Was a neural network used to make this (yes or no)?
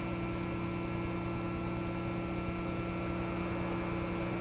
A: no